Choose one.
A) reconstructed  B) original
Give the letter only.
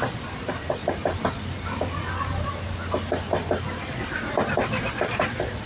B